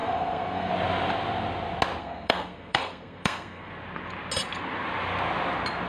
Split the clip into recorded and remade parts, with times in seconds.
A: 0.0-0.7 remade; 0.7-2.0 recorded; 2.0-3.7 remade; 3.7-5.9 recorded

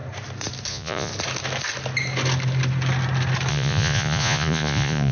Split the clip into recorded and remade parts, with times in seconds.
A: 0.0-0.7 recorded; 0.7-1.1 remade; 1.1-3.5 recorded; 3.5-5.1 remade

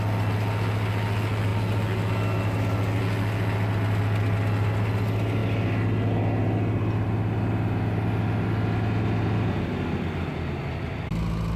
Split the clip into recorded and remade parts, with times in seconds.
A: 0.0-11.6 recorded

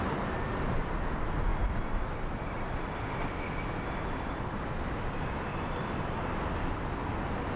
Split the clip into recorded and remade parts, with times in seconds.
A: 0.0-7.6 recorded

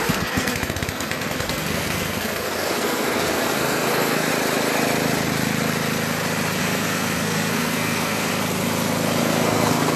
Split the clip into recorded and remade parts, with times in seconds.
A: 0.0-4.3 remade; 4.3-6.6 recorded; 6.6-8.3 remade; 8.3-9.2 recorded; 9.2-10.0 remade

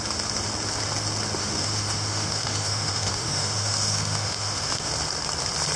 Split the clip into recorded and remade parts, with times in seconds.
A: 0.0-1.4 recorded; 1.4-4.9 remade; 4.9-5.8 recorded

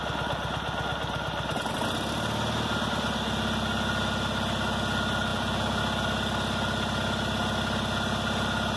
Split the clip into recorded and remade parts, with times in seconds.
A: 0.0-5.3 recorded; 5.3-5.8 remade; 5.8-8.8 recorded